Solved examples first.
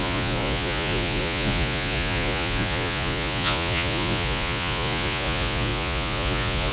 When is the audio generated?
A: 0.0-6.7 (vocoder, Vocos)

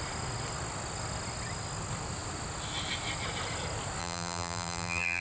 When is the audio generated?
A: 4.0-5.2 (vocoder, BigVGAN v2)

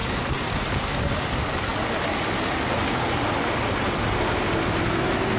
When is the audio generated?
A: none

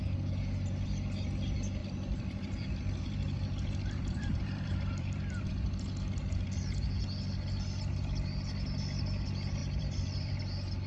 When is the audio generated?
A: 1.8-5.5 (vocoder, BigVGAN v2); 9.6-10.4

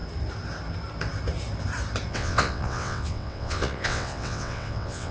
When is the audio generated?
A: 2.1-5.1 (vocoder, WaveNeXt)

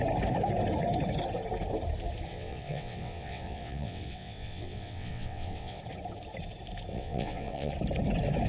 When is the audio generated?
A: 2.3-5.8 (vocoder, WaveNeXt); 6.9-7.7

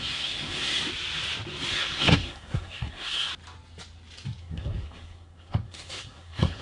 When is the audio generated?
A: 0.0-0.8 (codec, SNAC); 1.7-3.3; 4.4-6.6

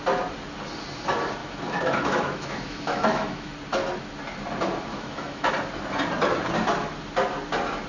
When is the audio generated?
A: 1.4-3.5 (autoencoder, DAC-VAE); 4.9-5.5